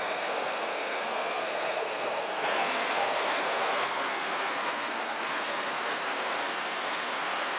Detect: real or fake fake